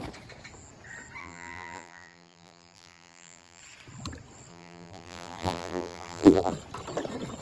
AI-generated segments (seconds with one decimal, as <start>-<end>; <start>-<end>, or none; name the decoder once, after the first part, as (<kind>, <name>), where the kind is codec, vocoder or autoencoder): 1.2-3.6 (vocoder, BigVGAN v2); 4.5-6.5